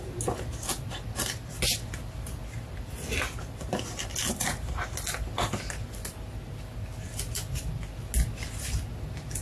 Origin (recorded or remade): recorded